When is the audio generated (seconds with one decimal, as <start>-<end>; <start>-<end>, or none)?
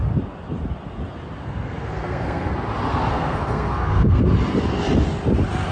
1.4-2.5; 2.9-4.2